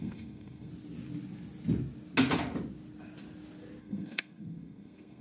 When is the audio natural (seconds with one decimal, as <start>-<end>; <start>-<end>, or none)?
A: 0.7-3.8